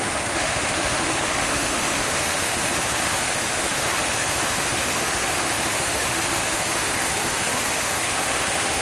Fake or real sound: fake